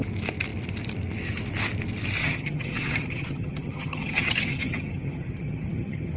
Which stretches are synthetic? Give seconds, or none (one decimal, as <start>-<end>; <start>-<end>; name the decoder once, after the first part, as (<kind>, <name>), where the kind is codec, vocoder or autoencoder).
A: 2.2-6.2 (vocoder, HiFi-GAN)